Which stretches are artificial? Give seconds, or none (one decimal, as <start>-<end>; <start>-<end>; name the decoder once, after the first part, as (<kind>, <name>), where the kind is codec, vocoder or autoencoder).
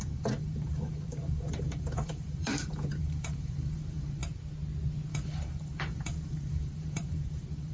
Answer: 0.0-4.2 (vocoder, BigVGAN v2); 5.1-7.7